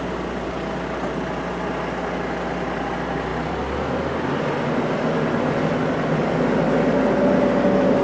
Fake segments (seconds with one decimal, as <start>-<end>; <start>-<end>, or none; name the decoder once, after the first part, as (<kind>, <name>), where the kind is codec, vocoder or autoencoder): none